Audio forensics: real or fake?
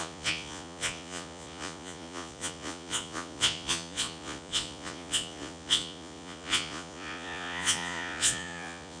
fake